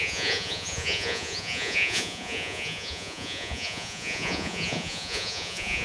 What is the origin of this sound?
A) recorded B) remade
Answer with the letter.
B